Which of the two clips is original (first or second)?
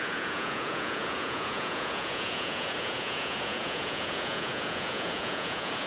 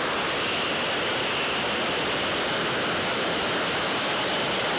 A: second